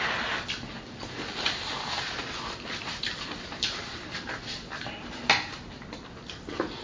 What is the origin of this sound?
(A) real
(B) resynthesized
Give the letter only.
A